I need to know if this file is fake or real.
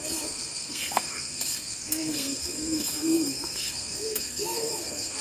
fake